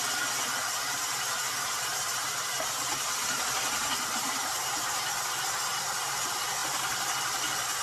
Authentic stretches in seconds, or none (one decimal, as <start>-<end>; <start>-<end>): 0.0-2.1; 5.0-6.6; 7.2-7.8